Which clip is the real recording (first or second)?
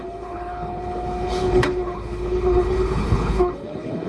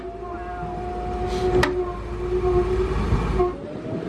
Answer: second